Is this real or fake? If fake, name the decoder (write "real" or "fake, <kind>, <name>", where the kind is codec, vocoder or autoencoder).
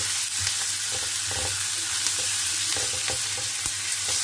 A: real